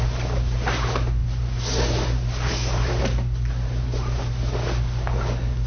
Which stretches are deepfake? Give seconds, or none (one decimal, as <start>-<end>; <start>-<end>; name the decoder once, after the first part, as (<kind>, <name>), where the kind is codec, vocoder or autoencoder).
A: none

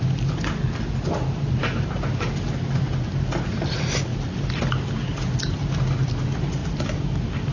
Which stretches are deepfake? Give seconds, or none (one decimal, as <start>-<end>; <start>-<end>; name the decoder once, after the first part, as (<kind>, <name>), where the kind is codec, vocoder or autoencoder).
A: none

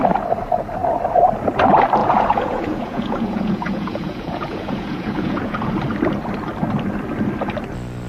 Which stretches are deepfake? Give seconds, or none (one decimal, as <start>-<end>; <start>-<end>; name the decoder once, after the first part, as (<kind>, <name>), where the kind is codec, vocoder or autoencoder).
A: 2.0-5.7 (vocoder, Vocos)

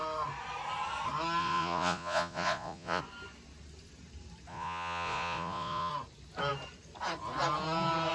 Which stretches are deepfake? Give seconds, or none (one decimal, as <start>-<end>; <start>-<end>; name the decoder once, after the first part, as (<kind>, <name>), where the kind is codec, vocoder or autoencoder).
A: 1.4-3.0 (vocoder, Vocos); 4.5-5.9

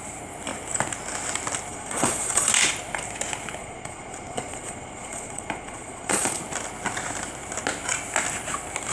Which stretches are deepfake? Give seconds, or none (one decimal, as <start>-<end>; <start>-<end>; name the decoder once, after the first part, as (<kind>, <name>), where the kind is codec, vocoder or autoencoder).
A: 1.7-2.5 (vocoder, Vocos); 3.6-6.4